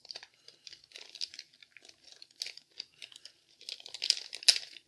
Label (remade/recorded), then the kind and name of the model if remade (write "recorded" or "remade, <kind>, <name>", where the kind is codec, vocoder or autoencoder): recorded